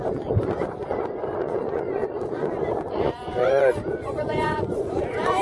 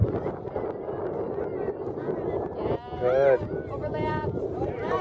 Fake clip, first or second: first